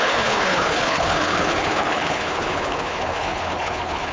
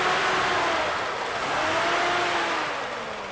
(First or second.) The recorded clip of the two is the second